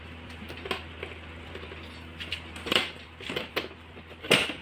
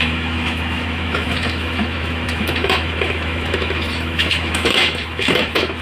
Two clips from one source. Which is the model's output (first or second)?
second